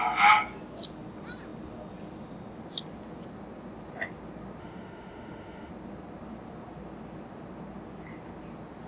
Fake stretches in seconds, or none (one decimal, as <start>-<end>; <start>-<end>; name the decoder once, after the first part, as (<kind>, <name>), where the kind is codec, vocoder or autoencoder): 4.6-5.7 (autoencoder, DAC-VAE)